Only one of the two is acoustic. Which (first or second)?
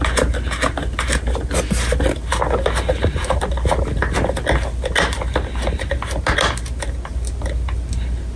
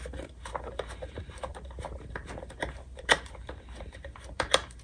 first